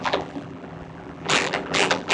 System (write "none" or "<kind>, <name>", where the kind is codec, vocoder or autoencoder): vocoder, BigVGAN v2